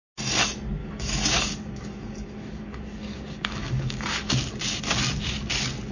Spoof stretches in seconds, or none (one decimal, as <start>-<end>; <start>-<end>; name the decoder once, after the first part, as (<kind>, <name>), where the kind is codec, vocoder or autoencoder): 0.8-4.3 (codec, DAC)